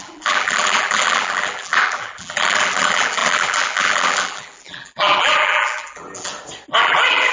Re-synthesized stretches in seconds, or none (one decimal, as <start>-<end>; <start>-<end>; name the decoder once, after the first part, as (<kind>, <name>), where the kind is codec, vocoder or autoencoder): 0.0-6.3 (vocoder, BigVGAN v2); 6.8-7.3